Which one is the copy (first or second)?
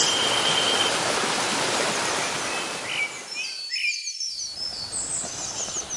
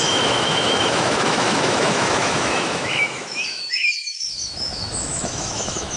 second